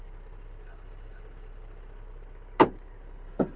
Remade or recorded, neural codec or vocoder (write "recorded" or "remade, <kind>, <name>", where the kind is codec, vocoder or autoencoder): recorded